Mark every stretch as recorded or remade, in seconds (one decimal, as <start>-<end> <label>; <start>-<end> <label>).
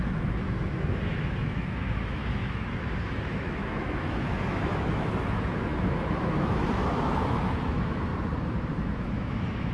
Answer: 0.0-8.1 remade; 8.1-8.8 recorded; 8.8-9.7 remade